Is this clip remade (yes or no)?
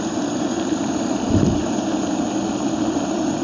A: yes